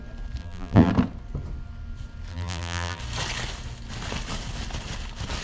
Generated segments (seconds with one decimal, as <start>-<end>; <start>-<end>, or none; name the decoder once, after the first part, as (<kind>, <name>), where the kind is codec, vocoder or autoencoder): 0.4-0.9 (vocoder, BigVGAN v2); 2.3-3.0